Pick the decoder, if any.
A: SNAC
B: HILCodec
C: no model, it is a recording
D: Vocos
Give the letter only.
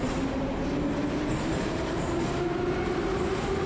C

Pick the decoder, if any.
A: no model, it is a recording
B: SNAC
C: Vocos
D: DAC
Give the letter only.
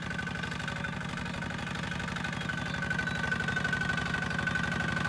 A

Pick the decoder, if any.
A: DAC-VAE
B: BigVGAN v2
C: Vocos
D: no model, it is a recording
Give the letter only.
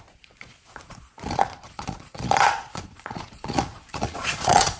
C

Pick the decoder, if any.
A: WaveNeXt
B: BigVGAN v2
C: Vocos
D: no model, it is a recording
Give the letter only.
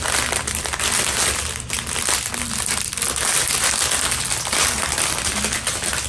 D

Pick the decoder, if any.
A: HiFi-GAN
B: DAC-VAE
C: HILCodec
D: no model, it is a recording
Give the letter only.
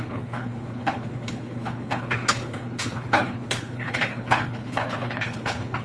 C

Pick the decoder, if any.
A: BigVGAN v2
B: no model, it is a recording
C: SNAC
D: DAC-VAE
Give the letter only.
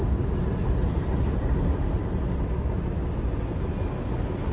B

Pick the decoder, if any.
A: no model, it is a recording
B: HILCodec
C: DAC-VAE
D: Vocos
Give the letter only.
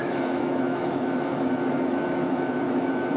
C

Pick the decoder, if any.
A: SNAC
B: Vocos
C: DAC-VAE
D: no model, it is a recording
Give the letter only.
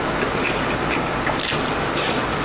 D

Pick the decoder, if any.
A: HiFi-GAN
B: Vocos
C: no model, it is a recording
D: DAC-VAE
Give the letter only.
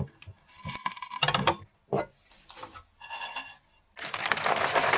C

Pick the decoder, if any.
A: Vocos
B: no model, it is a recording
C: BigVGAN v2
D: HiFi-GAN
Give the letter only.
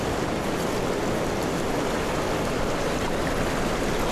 B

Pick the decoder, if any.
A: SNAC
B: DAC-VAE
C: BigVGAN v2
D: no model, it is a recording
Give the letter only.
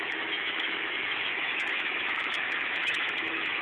B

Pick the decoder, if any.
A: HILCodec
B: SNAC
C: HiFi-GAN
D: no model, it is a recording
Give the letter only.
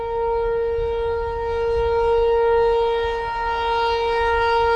D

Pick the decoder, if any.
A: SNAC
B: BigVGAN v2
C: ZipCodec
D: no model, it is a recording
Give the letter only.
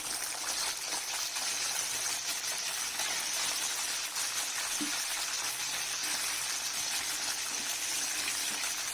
D